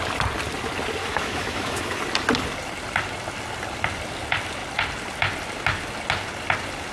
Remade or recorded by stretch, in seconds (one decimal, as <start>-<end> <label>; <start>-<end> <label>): 0.0-1.0 recorded; 1.0-2.0 remade; 2.0-6.9 recorded